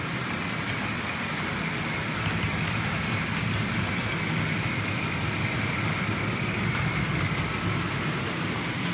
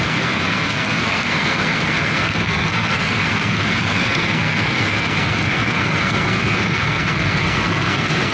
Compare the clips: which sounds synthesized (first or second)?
second